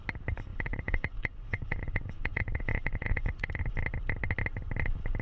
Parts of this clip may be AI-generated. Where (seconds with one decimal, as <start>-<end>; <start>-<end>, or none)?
0.5-3.6